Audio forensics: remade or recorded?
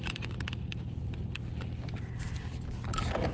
recorded